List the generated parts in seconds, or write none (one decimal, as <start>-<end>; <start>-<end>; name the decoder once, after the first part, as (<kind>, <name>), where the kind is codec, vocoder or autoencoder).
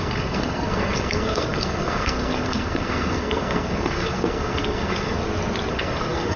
0.0-5.2 (codec, SNAC); 5.7-6.4